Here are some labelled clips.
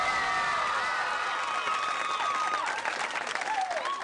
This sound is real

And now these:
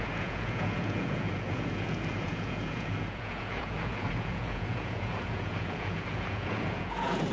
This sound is fake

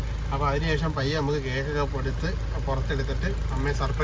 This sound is real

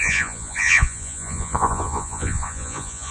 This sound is fake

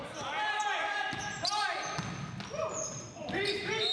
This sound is real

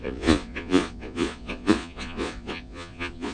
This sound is fake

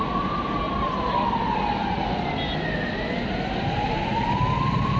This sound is real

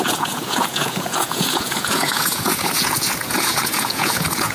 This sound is fake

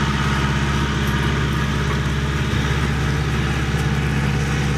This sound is real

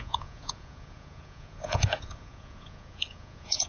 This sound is fake